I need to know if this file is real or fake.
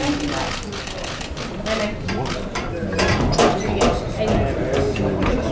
real